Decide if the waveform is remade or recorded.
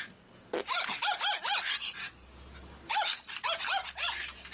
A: recorded